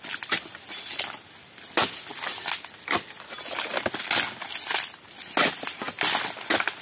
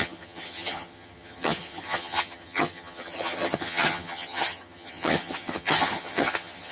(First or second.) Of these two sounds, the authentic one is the first